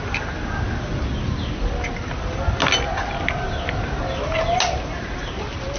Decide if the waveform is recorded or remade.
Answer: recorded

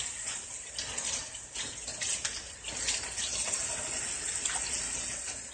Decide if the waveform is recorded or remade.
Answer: recorded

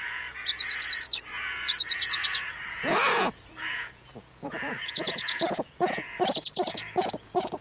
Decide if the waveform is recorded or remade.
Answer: remade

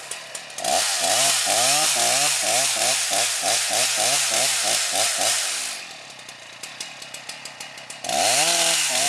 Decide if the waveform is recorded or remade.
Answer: recorded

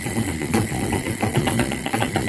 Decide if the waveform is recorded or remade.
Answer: remade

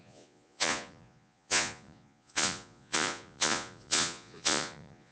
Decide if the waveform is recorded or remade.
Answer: remade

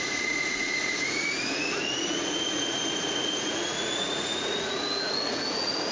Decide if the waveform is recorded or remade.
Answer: remade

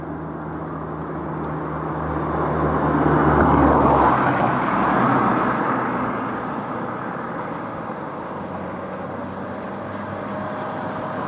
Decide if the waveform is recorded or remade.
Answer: recorded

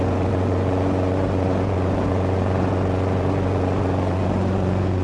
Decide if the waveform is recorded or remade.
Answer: remade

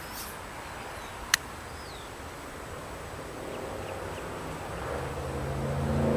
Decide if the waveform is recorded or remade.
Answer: recorded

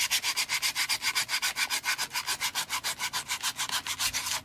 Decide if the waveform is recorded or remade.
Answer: recorded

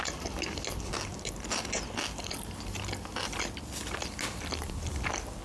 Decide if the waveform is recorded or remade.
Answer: recorded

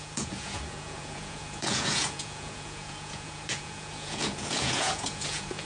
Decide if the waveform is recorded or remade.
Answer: remade